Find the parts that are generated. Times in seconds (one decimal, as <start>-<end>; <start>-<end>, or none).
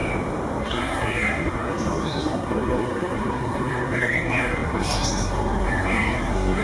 0.6-6.6